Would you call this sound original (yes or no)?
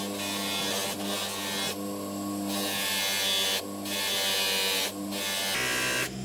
yes